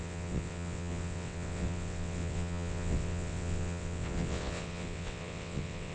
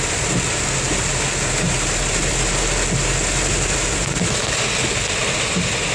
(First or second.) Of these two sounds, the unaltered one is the second